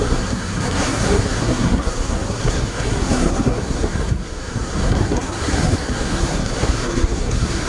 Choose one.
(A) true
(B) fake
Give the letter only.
B